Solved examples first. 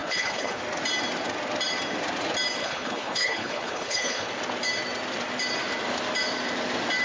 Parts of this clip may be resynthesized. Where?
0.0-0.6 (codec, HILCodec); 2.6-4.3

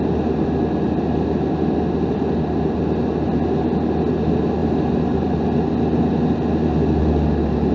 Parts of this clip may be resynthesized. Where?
none

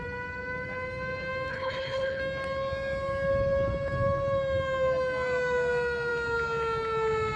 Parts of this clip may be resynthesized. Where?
1.5-2.2 (codec, HILCodec)